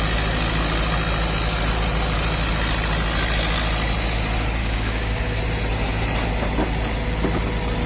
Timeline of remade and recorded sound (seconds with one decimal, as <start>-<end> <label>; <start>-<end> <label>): 0.0-4.6 recorded; 4.6-5.4 remade; 5.4-7.9 recorded

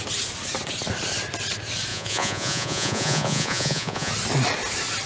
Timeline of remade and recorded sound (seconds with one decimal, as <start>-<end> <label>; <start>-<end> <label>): 0.0-1.9 recorded; 1.9-4.1 remade; 4.1-5.1 recorded

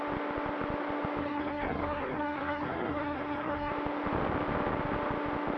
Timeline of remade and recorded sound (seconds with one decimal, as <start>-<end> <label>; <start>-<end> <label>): 0.0-1.2 recorded; 1.2-3.7 remade; 3.7-5.6 recorded

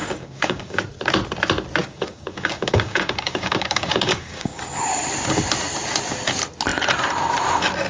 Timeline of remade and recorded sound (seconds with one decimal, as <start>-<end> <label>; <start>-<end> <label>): 0.0-0.8 remade; 0.8-1.8 recorded; 1.8-4.6 remade; 4.6-7.9 recorded